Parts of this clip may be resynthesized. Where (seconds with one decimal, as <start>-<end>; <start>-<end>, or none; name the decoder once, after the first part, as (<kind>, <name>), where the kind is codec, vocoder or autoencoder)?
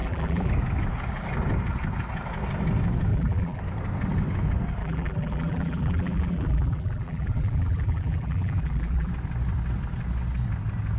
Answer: 0.0-0.5 (vocoder, BigVGAN v2); 3.1-3.6; 4.8-9.1